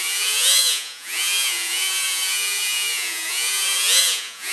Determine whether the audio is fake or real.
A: fake